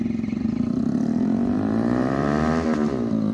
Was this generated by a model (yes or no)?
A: yes